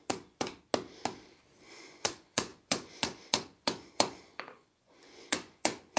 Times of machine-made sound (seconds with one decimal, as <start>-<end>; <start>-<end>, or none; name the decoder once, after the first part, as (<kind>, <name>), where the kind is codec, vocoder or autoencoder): 0.0-0.5 (vocoder, Vocos); 1.7-6.0